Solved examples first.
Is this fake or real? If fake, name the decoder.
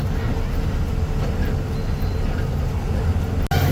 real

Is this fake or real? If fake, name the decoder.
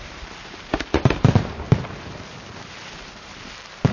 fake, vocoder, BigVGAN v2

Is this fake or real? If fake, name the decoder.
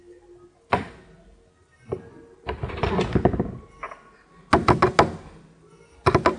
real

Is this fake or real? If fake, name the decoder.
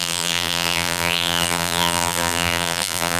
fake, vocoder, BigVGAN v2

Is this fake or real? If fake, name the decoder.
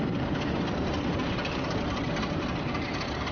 fake, vocoder, BigVGAN v2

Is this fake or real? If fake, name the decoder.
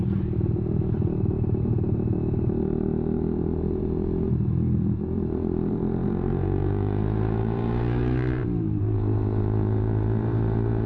fake, vocoder, BigVGAN v2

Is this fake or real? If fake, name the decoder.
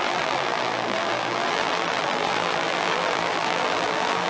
fake, vocoder, BigVGAN v2